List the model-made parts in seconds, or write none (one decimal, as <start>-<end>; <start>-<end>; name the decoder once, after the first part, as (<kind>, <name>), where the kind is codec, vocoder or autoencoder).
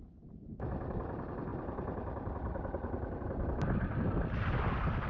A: 1.5-4.0 (vocoder, BigVGAN v2)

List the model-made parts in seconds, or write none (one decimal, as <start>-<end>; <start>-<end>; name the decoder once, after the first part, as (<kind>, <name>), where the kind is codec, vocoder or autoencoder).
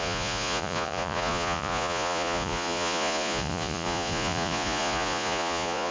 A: 0.0-5.9 (vocoder, Vocos)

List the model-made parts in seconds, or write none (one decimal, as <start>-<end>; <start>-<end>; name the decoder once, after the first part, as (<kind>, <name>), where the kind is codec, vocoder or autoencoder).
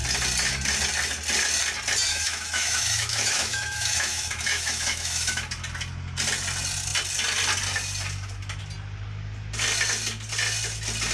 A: 2.1-5.4 (autoencoder, DAC-VAE)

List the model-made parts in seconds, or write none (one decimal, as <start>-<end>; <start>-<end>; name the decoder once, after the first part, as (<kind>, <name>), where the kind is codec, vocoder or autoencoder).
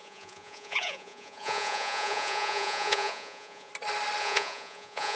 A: 0.0-3.7 (vocoder, Vocos); 4.2-5.2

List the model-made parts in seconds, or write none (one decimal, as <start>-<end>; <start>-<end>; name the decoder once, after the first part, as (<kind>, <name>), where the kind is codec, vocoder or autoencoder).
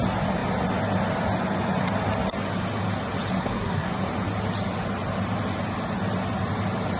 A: 3.4-3.9 (codec, SNAC)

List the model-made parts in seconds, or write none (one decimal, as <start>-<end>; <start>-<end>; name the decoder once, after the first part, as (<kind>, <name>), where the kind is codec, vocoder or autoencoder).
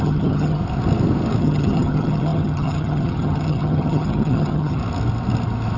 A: 0.0-0.6 (vocoder, HiFi-GAN); 1.4-4.8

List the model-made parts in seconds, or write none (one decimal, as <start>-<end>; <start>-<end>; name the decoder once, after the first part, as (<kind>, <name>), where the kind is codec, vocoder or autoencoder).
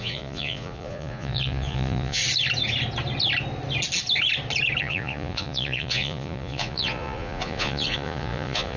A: 0.0-2.2 (vocoder, Vocos); 4.8-8.8